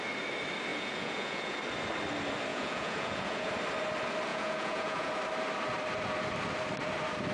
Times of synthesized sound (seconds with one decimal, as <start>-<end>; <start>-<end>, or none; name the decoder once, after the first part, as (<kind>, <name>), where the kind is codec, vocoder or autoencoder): 0.7-1.6 (vocoder, Vocos); 2.5-3.5; 4.3-5.1